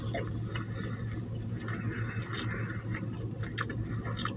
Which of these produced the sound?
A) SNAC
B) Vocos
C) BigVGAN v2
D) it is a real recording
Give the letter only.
D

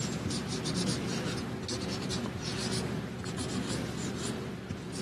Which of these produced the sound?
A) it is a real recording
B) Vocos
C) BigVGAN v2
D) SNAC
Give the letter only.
C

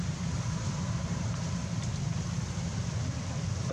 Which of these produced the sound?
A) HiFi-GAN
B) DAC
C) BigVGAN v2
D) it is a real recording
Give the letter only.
C